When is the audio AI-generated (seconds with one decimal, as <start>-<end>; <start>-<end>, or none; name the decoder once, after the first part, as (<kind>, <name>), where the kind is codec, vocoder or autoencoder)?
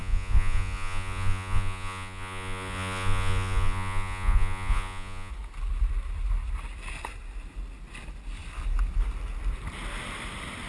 0.0-5.3 (vocoder, Vocos)